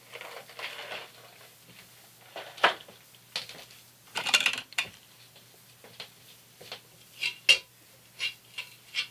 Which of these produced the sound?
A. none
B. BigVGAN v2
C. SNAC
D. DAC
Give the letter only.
A